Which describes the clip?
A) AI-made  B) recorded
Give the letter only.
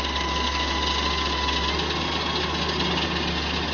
B